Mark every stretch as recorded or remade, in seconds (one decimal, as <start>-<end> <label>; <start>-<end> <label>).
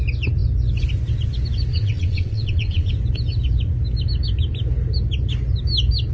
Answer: 0.0-1.7 recorded; 1.7-2.9 remade; 2.9-6.1 recorded